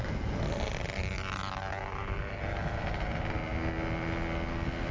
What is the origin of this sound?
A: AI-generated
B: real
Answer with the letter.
B